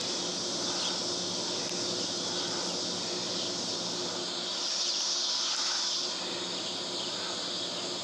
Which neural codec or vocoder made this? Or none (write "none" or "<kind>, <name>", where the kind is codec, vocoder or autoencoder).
none